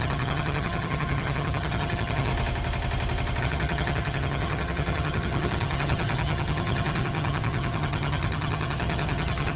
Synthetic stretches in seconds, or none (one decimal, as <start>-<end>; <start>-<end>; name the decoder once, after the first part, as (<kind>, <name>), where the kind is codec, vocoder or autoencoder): 0.0-2.3 (vocoder, HiFi-GAN); 3.4-9.6